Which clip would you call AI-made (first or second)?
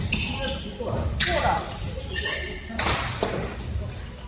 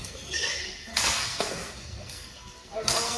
second